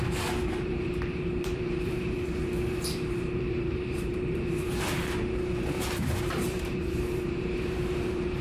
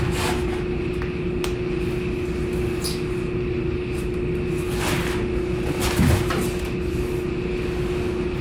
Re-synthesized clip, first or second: first